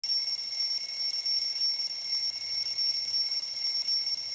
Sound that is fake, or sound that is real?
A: real